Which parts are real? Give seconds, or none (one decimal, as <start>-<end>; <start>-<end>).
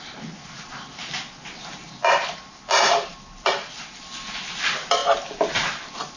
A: 0.0-3.1; 4.1-6.2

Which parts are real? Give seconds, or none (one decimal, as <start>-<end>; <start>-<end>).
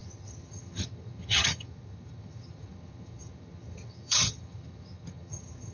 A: none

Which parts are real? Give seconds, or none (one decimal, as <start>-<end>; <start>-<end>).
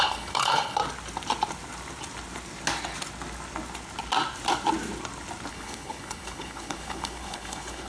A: 0.8-5.5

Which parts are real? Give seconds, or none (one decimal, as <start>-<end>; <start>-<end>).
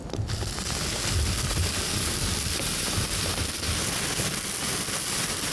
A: 3.3-5.5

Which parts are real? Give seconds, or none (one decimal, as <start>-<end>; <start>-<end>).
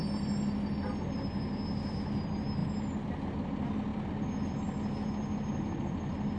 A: 0.0-6.4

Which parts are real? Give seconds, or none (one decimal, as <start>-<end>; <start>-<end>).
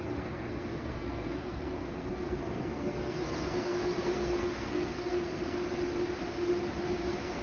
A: 5.6-6.8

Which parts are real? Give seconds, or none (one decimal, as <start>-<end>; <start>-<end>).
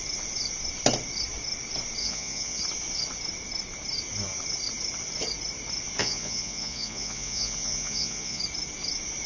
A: 0.0-2.0; 2.6-6.0; 8.4-9.3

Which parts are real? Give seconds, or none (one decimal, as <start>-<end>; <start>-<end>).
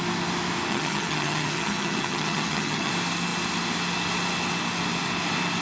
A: 0.0-0.7; 2.9-5.6